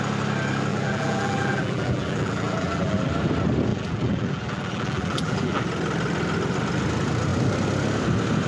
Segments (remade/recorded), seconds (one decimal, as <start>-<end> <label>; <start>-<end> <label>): 0.0-0.7 recorded; 0.7-3.1 remade; 3.1-3.7 recorded; 3.7-5.6 remade; 5.6-8.5 recorded